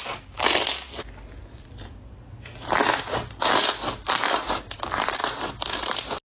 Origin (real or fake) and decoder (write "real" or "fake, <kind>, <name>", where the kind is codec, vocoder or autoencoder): real